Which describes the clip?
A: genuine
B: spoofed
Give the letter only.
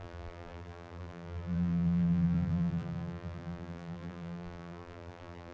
B